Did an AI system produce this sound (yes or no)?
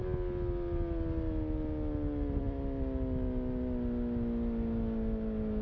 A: no